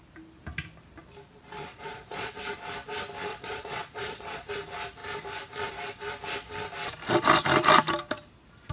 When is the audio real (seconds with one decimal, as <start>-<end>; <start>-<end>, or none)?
0.0-1.7; 2.3-3.3; 4.5-8.7

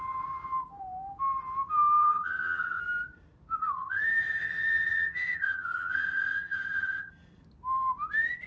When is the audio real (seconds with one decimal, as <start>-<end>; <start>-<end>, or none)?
0.0-2.0; 2.8-3.6; 7.1-8.5

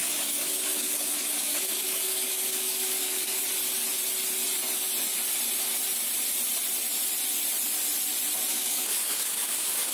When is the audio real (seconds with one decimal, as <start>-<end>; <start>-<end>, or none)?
3.4-8.5

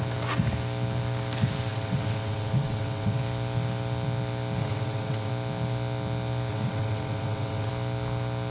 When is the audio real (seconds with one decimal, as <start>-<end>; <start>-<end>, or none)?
0.0-1.7; 3.2-4.6; 5.3-6.5; 7.7-8.5

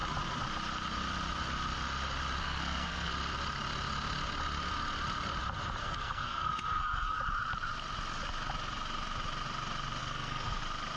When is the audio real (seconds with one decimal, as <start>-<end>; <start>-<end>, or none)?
0.0-2.4; 3.1-5.8; 7.2-10.0; 10.6-11.0

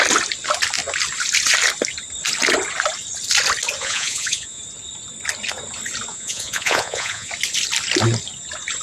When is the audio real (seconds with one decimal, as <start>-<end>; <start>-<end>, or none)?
0.0-3.8; 4.6-6.1; 7.3-8.8